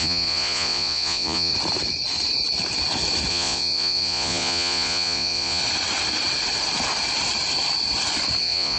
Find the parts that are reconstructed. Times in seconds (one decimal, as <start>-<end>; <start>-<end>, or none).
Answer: 0.0-1.5; 3.3-5.6; 8.4-8.8